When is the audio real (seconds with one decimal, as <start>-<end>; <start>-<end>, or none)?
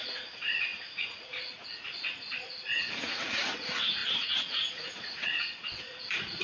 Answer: none